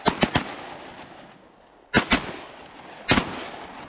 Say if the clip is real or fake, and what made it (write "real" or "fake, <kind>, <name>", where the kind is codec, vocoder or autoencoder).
real